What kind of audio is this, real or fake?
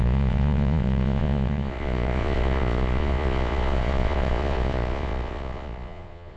fake